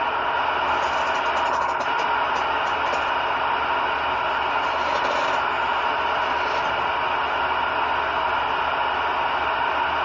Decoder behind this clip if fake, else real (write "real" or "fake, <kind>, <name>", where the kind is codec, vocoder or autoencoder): real